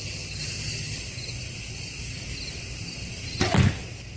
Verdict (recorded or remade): recorded